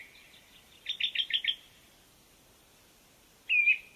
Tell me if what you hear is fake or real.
real